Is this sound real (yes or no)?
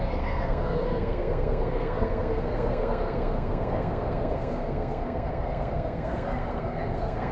no